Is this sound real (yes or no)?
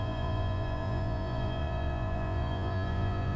no